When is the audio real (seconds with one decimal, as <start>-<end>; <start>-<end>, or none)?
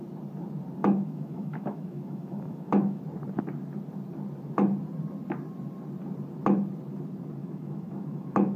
0.0-0.8; 3.0-7.4